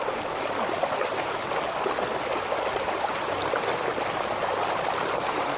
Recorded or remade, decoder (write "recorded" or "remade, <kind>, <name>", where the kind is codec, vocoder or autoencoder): recorded